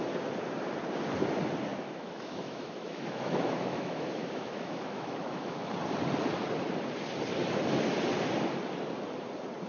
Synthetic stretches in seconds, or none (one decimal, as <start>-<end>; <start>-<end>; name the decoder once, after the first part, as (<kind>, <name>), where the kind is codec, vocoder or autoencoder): 1.7-5.7 (autoencoder, DAC-VAE)

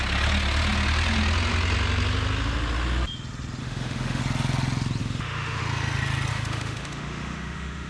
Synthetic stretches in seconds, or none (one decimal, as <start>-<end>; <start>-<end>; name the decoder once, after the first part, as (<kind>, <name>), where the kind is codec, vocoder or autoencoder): 3.6-4.2 (autoencoder, DAC-VAE); 5.0-5.6; 6.3-7.9

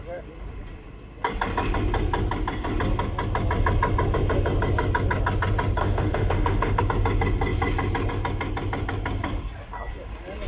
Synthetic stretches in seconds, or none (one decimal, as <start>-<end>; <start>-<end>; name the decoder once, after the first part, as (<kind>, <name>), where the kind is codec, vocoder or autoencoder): 5.8-6.8 (autoencoder, DAC-VAE)

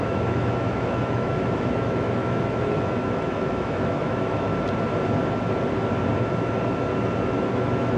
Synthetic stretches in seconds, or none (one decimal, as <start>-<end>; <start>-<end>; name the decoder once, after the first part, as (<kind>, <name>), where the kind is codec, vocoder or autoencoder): 0.0-4.5 (autoencoder, DAC-VAE); 7.5-8.0

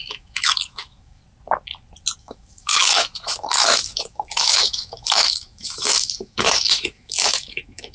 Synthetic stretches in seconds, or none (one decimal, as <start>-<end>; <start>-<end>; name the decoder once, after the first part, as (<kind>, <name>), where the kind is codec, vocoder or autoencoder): 0.0-1.2 (autoencoder, DAC-VAE); 2.2-7.9

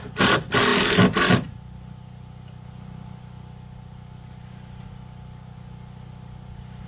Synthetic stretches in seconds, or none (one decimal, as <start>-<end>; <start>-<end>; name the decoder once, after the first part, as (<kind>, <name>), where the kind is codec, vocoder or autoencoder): none

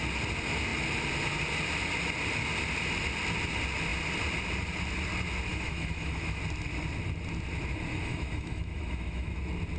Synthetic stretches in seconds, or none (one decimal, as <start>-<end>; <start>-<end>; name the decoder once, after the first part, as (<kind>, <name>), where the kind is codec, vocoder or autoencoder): 5.5-6.4 (autoencoder, DAC-VAE); 7.9-9.4

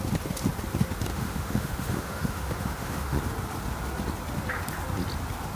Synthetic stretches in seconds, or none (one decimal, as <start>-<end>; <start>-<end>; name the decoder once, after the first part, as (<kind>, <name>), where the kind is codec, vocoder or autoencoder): 1.1-3.2 (autoencoder, DAC-VAE)